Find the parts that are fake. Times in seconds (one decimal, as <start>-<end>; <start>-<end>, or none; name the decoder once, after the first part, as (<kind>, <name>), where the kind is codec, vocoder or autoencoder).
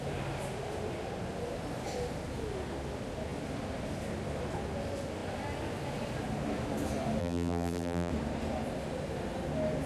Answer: 7.2-8.1 (vocoder, BigVGAN v2)